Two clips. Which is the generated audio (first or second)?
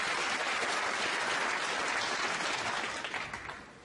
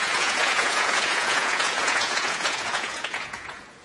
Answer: second